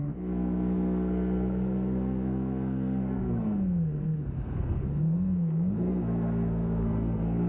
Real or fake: fake